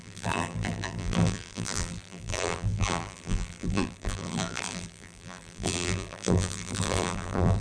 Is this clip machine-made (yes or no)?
yes